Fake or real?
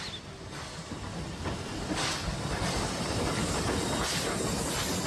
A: real